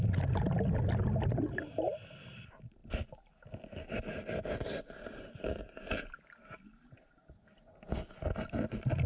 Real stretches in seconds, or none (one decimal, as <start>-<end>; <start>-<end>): 0.0-9.1